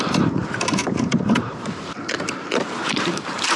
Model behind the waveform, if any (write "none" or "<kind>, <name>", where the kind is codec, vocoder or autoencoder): vocoder, BigVGAN v2